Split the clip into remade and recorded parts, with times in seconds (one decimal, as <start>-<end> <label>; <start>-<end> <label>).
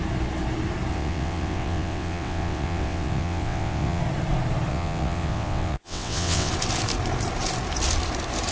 0.0-0.9 recorded; 0.9-4.0 remade; 4.0-4.7 recorded; 4.7-6.5 remade; 6.5-8.5 recorded